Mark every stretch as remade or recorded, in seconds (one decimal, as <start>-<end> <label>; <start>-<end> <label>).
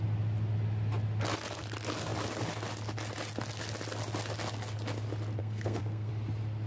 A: 0.0-5.4 recorded; 5.4-6.1 remade; 6.1-6.7 recorded